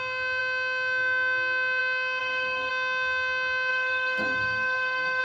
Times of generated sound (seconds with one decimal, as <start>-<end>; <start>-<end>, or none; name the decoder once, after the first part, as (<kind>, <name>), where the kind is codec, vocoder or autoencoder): 2.2-2.7 (codec, SNAC); 3.7-5.2